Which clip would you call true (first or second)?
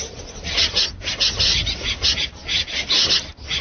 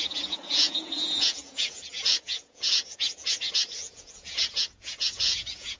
first